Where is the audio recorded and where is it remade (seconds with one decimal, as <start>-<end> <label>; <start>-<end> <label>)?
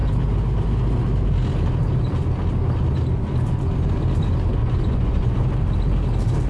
0.0-4.6 recorded; 4.6-5.4 remade; 5.4-6.5 recorded